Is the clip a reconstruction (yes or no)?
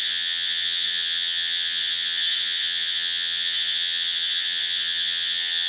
yes